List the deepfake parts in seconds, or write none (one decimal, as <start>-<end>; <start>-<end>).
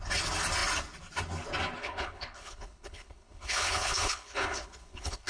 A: 1.8-5.3